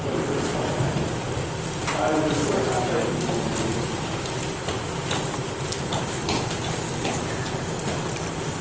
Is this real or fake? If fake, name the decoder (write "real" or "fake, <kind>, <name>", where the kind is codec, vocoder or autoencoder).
real